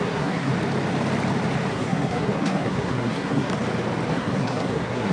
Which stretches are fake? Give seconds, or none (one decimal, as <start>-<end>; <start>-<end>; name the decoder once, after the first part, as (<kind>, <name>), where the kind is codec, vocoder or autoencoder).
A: 0.0-0.5 (codec, SNAC); 1.7-3.5; 4.1-5.1